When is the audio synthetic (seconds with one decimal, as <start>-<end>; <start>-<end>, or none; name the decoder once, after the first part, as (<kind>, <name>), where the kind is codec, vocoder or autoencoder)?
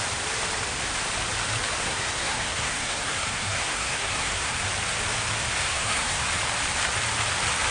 1.8-4.6 (codec, SNAC); 5.6-6.3